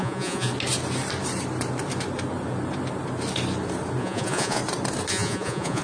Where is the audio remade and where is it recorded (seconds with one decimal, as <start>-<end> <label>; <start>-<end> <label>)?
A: 0.0-0.5 remade; 0.5-4.0 recorded; 4.0-4.6 remade; 4.6-5.1 recorded; 5.1-5.8 remade